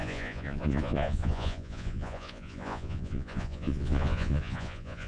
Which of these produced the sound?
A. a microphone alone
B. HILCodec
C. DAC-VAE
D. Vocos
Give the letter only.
D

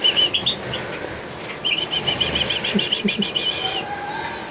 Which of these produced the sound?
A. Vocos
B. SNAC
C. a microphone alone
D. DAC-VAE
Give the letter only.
C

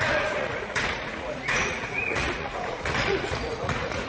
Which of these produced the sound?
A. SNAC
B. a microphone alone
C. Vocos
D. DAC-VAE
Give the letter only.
C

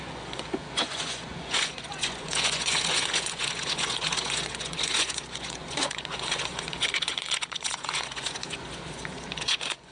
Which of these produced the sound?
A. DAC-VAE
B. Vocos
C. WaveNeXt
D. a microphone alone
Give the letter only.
B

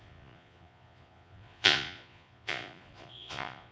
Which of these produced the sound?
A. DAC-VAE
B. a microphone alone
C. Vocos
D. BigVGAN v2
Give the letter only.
C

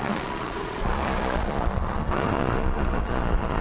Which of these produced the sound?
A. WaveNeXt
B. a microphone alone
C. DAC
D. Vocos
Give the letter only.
D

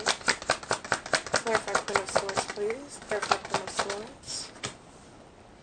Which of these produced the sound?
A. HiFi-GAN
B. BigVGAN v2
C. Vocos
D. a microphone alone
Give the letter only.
D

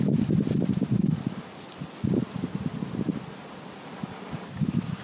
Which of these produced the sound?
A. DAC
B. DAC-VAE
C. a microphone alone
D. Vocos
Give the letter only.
C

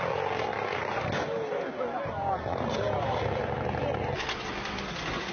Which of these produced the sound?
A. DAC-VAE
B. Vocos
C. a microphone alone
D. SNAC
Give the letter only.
C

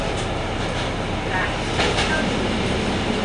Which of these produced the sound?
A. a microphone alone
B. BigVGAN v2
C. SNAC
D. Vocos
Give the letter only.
A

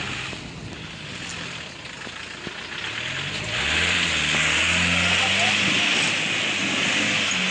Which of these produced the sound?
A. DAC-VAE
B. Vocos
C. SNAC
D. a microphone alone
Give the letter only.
D